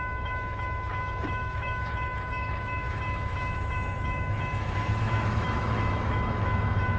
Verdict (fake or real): fake